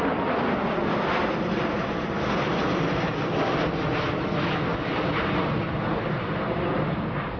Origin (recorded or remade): recorded